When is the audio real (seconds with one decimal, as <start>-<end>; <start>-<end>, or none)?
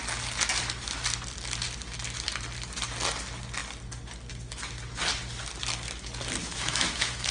0.0-6.4